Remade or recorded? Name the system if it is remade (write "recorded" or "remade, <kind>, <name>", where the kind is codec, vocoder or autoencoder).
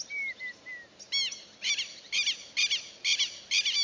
recorded